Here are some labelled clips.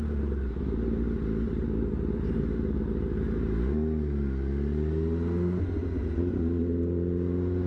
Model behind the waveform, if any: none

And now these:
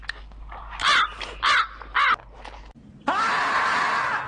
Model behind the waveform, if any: none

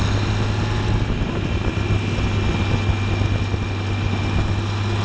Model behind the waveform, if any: none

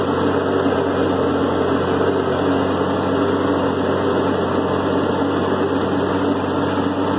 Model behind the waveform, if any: none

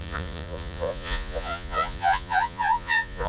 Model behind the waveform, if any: vocoder, Vocos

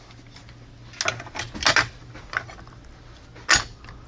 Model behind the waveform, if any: none